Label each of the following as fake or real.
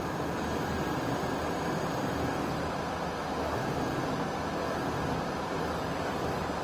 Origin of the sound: real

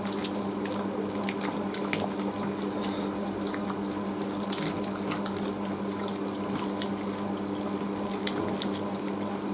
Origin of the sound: real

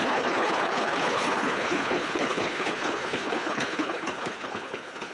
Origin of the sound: fake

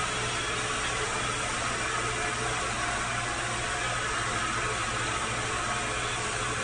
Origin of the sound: real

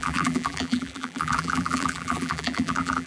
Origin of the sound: fake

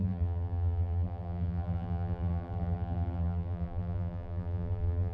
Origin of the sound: fake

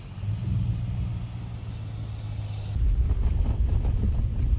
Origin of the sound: real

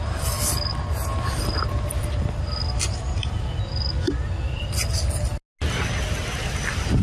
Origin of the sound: real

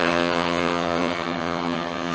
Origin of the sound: fake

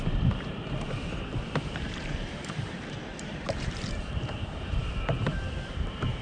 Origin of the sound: fake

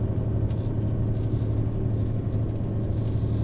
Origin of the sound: real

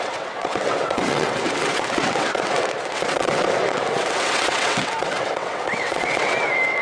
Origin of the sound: fake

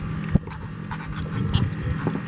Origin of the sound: real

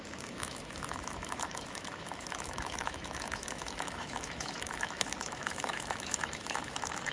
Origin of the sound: fake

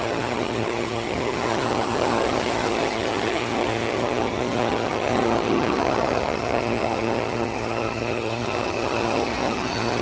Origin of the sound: fake